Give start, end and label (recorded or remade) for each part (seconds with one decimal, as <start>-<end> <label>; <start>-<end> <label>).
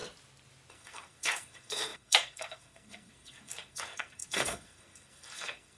0.0-0.7 recorded; 0.7-5.8 remade